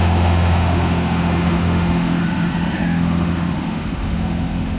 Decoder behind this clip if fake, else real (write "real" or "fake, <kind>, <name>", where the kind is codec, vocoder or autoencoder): fake, autoencoder, DAC-VAE